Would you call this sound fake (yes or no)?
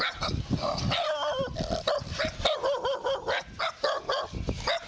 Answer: no